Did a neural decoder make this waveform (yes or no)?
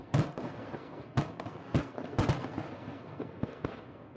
yes